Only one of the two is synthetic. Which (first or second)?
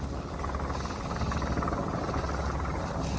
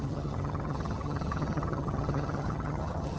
second